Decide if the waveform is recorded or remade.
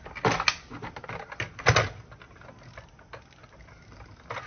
recorded